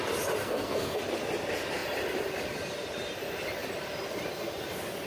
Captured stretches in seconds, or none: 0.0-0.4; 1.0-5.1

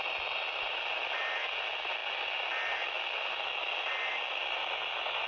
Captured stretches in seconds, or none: 0.0-5.3

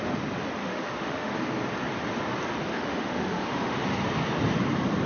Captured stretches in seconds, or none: 0.0-0.6; 1.3-2.7; 3.8-5.1

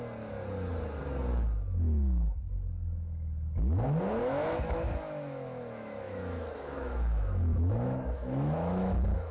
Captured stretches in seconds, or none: 0.0-4.2

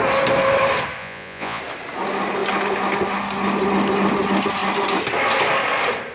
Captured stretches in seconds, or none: 0.0-1.0; 1.6-6.1

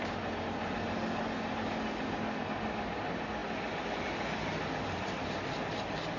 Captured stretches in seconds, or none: 0.0-6.2

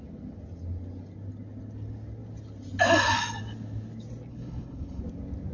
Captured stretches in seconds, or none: 0.0-4.3; 5.0-5.5